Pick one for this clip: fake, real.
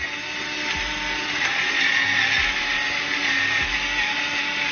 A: real